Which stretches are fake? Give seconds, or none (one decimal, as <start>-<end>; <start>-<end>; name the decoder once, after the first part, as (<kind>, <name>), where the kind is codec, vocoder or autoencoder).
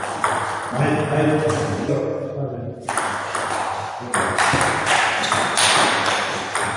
none